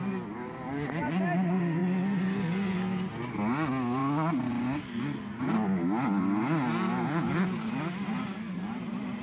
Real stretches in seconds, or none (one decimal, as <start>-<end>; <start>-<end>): 0.0-9.2